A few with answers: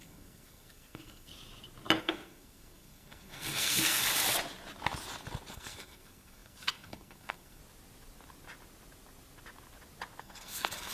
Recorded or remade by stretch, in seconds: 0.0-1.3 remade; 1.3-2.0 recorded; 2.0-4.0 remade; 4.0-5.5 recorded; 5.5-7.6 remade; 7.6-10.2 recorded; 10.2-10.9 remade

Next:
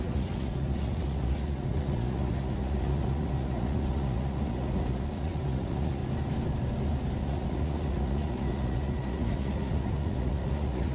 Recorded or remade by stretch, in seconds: 0.0-6.0 remade; 6.0-7.2 recorded; 7.2-10.9 remade

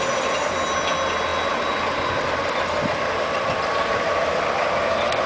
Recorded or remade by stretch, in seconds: 0.0-5.3 recorded

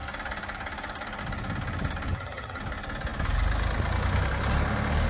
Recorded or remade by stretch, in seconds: 0.0-2.1 recorded; 2.1-2.6 remade; 2.6-5.1 recorded

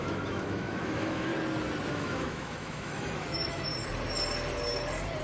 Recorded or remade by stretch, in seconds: 0.0-1.3 remade; 1.3-1.9 recorded; 1.9-3.7 remade; 3.7-5.2 recorded

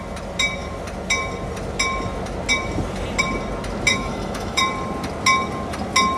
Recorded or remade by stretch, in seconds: 0.0-3.9 recorded; 3.9-4.6 remade; 4.6-6.2 recorded

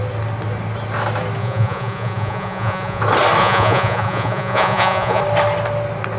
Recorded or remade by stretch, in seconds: 0.0-1.4 recorded; 1.4-3.0 remade; 3.0-3.4 recorded; 3.4-5.2 remade; 5.2-6.2 recorded

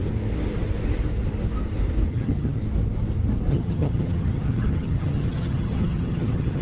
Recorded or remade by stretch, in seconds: 0.0-2.1 recorded; 2.1-2.6 remade; 2.6-3.5 recorded; 3.5-6.6 remade